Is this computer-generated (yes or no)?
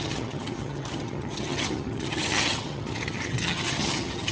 yes